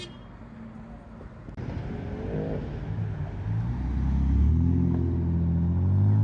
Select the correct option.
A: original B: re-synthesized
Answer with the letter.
A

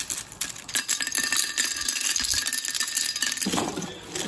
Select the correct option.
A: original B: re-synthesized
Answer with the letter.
A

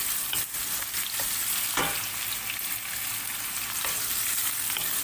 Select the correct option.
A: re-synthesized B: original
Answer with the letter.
B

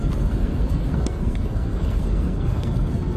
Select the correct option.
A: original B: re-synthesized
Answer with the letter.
B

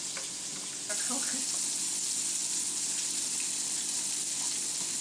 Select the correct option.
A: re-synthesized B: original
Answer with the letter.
B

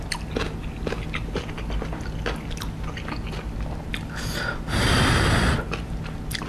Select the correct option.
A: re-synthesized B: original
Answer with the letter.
B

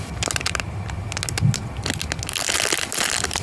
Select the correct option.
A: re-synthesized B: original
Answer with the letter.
B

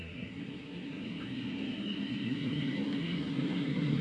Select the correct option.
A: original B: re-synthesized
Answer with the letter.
B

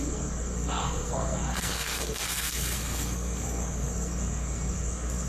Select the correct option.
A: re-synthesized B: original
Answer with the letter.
A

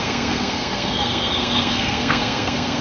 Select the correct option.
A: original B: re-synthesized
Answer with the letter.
B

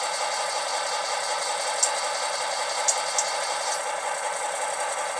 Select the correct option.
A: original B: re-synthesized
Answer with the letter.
A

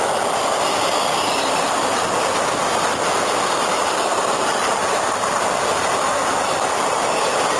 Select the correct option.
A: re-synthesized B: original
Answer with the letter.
B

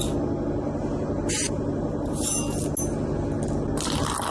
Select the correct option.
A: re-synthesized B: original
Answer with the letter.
B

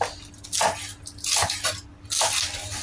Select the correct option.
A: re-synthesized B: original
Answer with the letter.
B